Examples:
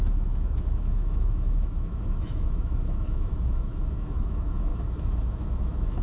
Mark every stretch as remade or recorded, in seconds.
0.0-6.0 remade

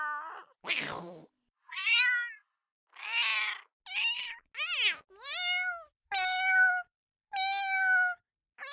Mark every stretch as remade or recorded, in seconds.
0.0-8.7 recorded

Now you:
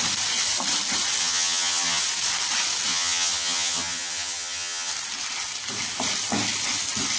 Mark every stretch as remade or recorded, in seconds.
0.0-1.2 recorded; 1.2-2.0 remade; 2.0-2.9 recorded; 2.9-4.9 remade; 4.9-7.2 recorded

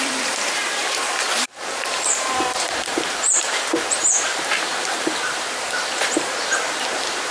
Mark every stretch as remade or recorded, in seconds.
0.0-7.3 remade

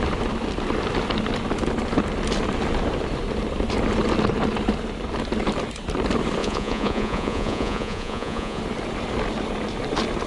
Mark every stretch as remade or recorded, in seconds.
0.0-6.4 recorded; 6.4-8.6 remade; 8.6-10.3 recorded

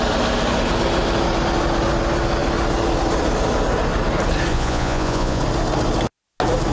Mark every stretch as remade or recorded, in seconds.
0.0-4.5 recorded; 4.5-5.4 remade; 5.4-6.7 recorded